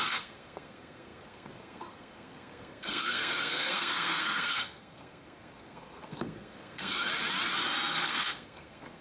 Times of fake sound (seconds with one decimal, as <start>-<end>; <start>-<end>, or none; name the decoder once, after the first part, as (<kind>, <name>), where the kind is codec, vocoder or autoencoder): 0.0-7.1 (codec, SNAC); 7.9-9.0